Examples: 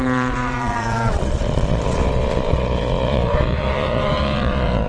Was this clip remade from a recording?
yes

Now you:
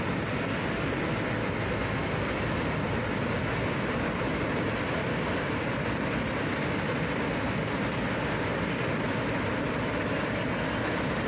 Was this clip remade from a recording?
no